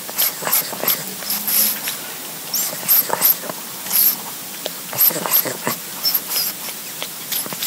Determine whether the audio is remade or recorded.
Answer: recorded